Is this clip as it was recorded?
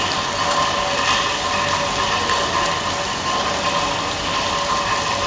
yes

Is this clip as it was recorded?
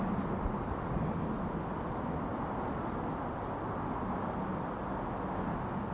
yes